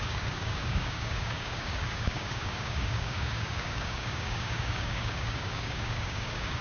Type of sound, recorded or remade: remade